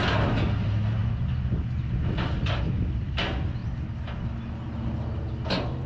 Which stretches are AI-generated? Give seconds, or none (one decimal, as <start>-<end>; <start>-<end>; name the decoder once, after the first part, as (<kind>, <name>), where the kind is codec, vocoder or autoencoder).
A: none